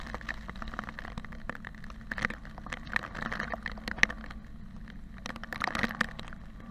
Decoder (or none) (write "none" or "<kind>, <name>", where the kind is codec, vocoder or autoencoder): none